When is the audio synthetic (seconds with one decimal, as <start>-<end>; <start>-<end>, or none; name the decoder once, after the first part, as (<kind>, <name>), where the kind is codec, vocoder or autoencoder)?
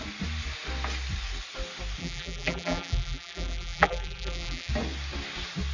2.0-4.7 (vocoder, BigVGAN v2)